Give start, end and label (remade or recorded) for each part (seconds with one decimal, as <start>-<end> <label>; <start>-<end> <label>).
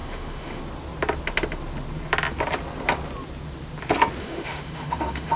0.0-0.6 remade; 0.6-4.2 recorded; 4.2-5.4 remade